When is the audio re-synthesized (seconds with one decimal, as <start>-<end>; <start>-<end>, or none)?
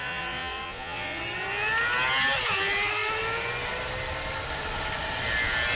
0.0-1.2